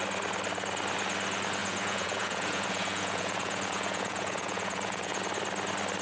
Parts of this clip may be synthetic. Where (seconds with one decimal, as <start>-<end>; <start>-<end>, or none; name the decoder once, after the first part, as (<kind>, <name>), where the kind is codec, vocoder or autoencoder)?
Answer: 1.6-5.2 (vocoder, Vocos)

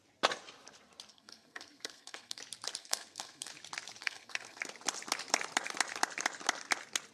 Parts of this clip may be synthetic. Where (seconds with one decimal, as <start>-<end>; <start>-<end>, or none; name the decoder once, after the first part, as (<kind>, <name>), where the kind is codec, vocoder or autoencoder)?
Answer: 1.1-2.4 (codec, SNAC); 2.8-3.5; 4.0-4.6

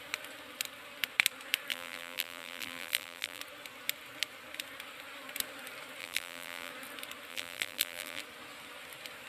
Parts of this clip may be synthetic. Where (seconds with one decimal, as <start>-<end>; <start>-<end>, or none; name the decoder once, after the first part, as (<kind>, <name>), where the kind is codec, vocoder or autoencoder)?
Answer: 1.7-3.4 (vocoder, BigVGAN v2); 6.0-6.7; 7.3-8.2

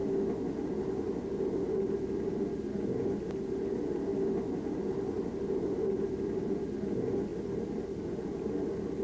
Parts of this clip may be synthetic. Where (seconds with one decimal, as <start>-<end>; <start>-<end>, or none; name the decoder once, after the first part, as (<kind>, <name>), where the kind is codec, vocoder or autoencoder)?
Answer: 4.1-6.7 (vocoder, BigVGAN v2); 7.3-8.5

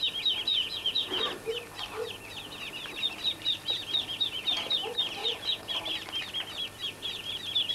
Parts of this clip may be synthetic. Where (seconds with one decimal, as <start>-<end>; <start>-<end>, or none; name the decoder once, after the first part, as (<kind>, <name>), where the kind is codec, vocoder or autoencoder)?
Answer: 0.5-1.2 (vocoder, Vocos); 5.2-5.7